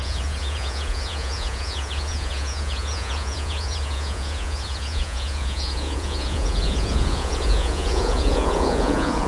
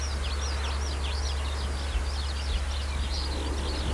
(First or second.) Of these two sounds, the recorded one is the second